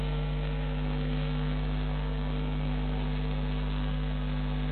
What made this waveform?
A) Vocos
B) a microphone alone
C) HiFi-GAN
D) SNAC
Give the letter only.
D